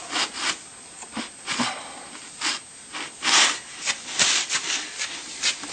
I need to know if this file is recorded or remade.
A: recorded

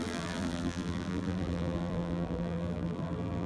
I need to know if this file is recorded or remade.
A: remade